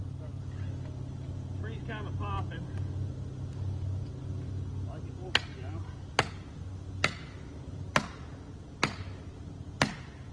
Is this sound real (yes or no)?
yes